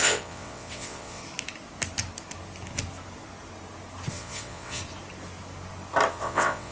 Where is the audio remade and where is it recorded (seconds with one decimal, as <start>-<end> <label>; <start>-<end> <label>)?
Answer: 0.0-1.2 remade; 1.2-4.1 recorded; 4.1-4.8 remade; 4.8-6.1 recorded; 6.1-6.7 remade